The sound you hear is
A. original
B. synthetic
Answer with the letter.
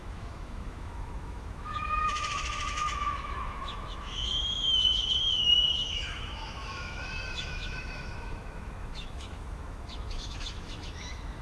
B